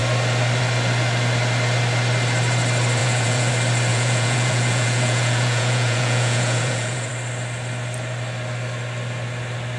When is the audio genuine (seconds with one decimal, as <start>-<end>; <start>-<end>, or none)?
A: 0.0-3.0; 3.5-3.9; 7.1-9.8